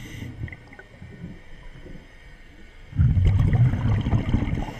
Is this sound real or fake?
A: real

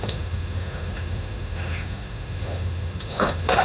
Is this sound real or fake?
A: fake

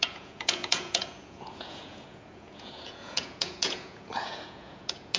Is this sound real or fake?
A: fake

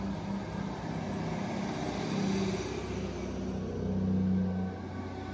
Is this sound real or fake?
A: real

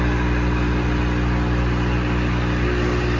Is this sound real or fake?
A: real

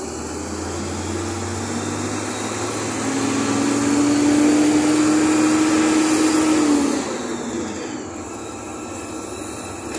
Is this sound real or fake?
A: real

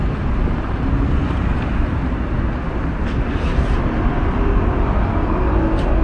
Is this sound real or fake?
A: real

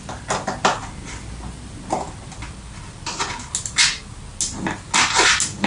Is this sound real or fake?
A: real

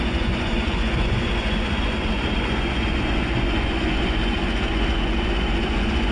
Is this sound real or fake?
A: fake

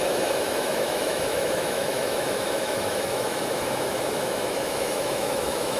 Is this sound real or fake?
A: fake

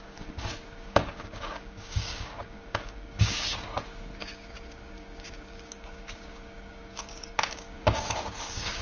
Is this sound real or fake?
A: fake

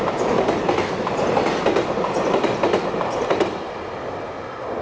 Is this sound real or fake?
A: real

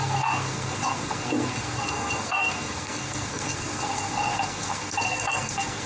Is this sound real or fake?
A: fake